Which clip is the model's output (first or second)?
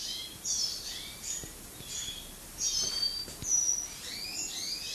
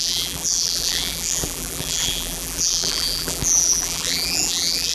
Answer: second